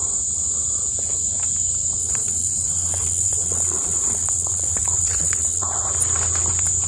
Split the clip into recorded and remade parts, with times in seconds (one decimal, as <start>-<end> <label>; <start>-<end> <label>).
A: 0.0-2.0 recorded; 2.0-5.9 remade; 5.9-6.9 recorded